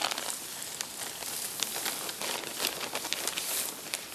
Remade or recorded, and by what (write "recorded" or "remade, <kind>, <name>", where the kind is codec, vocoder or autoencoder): recorded